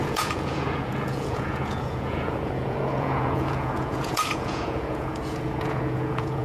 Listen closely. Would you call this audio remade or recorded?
remade